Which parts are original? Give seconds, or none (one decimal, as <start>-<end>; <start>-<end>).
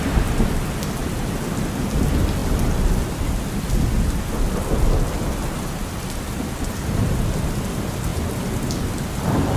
0.0-9.6